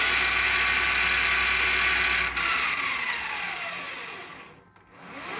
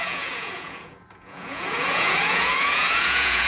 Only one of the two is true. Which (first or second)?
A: first